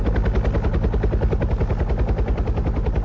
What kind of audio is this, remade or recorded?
recorded